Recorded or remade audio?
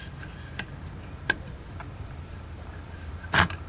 recorded